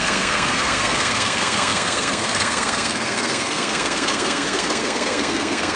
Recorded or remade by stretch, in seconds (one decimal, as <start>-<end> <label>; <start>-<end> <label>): 0.0-5.8 remade